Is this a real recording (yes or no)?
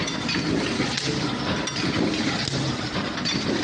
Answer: yes